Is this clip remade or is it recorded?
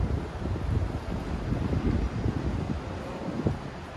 recorded